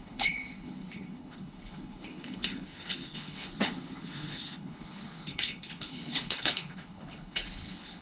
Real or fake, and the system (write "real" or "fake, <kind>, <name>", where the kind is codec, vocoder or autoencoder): fake, codec, HILCodec